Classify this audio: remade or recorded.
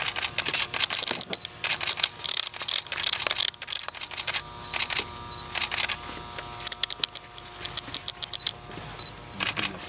recorded